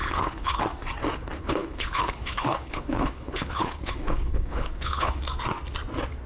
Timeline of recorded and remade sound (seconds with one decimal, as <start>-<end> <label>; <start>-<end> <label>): 0.0-0.6 remade; 0.6-1.4 recorded; 1.4-5.2 remade; 5.2-6.3 recorded